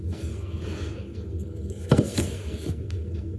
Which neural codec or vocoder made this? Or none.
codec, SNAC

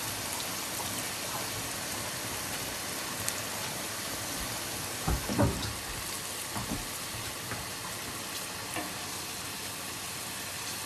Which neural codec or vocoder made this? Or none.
none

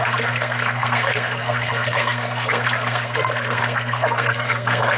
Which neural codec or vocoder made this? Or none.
codec, SNAC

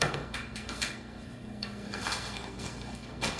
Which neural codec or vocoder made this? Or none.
codec, SNAC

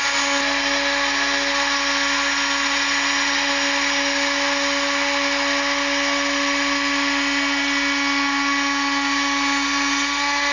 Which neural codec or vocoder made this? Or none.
none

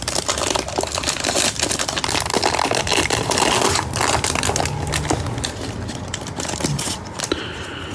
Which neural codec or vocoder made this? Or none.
none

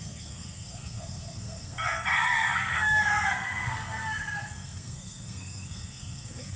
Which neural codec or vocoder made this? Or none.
codec, SNAC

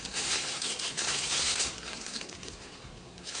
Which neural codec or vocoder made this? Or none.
codec, SNAC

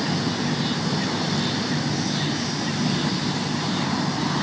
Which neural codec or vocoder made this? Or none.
none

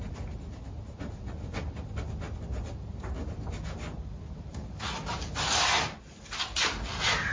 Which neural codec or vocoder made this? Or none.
none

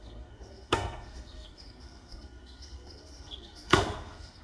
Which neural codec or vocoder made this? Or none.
codec, SNAC